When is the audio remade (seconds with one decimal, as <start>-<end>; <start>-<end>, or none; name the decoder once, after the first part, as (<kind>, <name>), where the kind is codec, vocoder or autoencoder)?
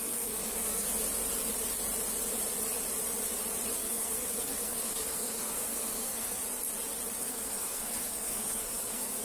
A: 0.0-0.9 (codec, SNAC); 3.8-6.4; 7.2-9.2